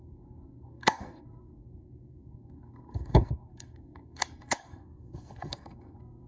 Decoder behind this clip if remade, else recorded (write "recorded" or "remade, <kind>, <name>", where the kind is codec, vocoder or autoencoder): remade, codec, SNAC